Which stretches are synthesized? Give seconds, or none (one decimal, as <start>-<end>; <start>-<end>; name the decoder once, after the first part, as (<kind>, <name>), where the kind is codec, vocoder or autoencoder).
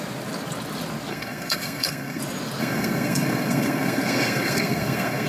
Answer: 1.1-2.2 (codec, SNAC); 2.6-5.3